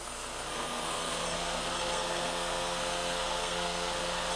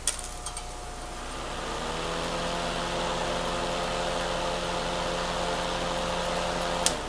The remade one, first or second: first